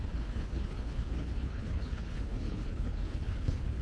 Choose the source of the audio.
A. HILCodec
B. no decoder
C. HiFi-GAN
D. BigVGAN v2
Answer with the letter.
A